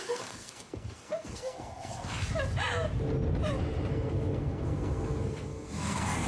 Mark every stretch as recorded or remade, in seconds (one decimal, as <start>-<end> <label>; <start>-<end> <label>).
0.0-2.3 remade; 2.3-3.9 recorded; 3.9-6.3 remade